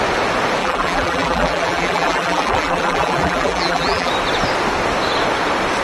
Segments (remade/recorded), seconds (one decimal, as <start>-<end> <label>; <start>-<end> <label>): 0.0-0.6 recorded; 0.6-4.1 remade; 4.1-5.8 recorded